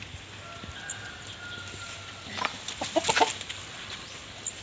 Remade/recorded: recorded